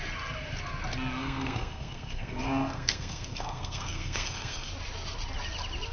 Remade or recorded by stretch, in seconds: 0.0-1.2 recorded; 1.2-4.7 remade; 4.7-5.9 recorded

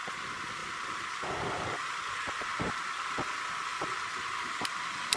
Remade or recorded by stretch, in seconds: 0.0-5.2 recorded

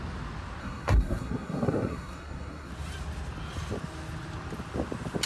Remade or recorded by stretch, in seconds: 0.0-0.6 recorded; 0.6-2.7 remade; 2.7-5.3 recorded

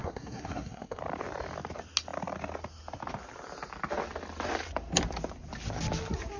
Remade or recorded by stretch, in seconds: 0.0-1.0 remade; 1.0-6.4 recorded